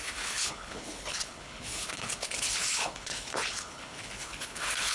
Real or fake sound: fake